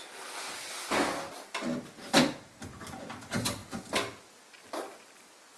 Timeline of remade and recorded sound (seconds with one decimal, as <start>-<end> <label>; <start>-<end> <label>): 0.0-5.6 recorded